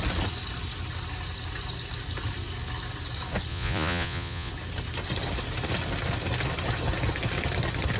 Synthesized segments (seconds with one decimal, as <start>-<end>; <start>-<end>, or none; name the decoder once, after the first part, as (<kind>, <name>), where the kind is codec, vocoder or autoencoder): 3.5-4.5 (vocoder, Vocos)